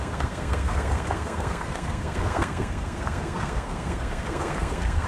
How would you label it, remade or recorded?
remade